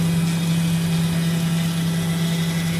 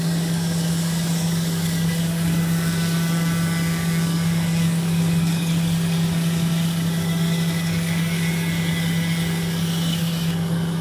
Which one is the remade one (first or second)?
second